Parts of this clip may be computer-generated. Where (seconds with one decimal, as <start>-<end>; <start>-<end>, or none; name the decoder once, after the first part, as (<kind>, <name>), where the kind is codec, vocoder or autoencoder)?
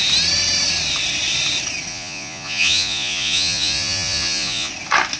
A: 1.9-4.7 (vocoder, Vocos)